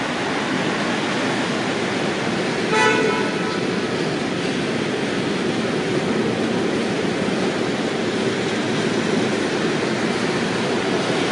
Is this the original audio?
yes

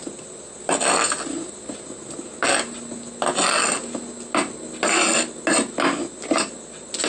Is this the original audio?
yes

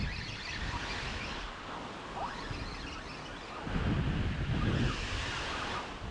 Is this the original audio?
yes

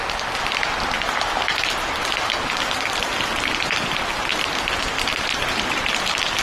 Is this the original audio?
no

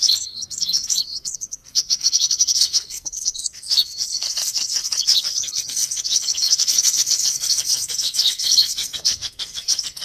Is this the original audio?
no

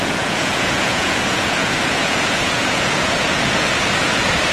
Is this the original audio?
no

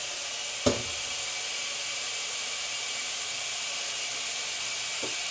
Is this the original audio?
yes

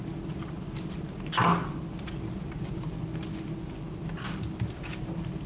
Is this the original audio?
yes